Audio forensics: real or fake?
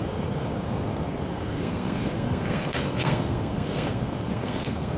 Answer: fake